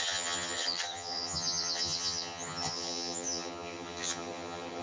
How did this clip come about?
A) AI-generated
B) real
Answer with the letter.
A